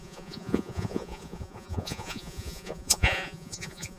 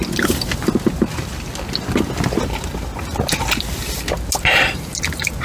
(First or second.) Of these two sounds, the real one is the second